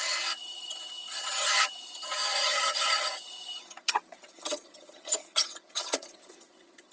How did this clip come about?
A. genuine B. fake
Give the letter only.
B